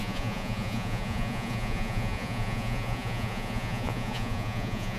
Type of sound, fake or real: fake